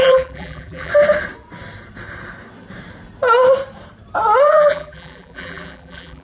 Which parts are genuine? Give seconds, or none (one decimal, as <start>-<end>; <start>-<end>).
0.9-4.5